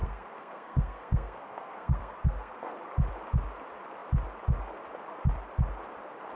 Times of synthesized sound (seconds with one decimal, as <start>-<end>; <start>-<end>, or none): 0.0-2.7

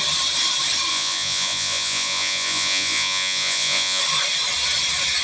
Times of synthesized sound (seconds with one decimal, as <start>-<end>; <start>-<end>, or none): 0.9-4.0

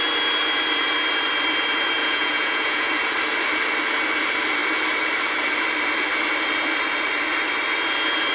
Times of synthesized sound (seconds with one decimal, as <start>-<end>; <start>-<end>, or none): 2.0-2.9

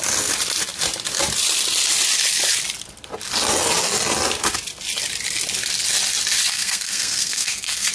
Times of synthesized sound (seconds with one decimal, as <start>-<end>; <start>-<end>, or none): 6.5-7.9

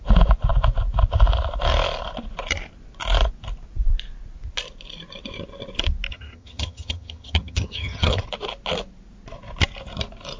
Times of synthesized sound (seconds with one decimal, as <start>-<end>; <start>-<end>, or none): 6.1-8.2